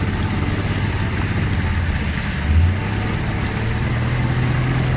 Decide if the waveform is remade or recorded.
recorded